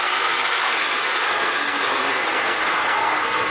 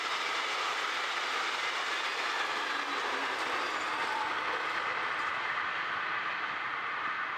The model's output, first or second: first